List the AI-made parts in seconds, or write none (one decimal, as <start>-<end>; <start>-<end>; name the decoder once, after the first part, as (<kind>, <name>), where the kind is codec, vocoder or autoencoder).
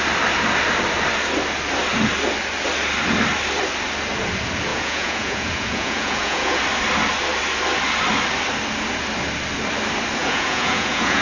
4.7-6.6 (vocoder, Vocos); 10.2-11.2